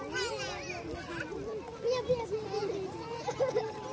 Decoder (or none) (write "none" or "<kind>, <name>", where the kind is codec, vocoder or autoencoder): none